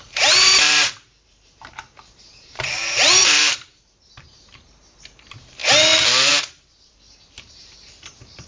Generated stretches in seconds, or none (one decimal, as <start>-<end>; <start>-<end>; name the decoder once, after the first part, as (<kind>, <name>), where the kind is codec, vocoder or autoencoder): 0.0-5.6 (vocoder, BigVGAN v2); 6.3-8.5